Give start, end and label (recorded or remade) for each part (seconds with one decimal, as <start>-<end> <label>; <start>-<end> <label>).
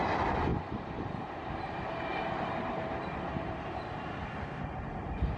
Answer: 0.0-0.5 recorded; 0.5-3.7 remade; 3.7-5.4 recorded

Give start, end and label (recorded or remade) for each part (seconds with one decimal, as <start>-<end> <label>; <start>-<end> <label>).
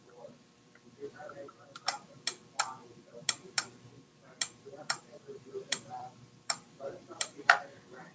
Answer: 0.0-1.6 remade; 1.6-4.6 recorded; 4.6-8.1 remade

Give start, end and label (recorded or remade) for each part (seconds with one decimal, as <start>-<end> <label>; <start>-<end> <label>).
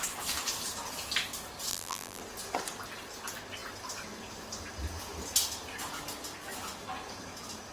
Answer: 0.0-1.7 recorded; 1.7-2.2 remade; 2.2-7.7 recorded